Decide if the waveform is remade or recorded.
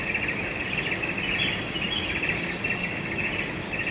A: recorded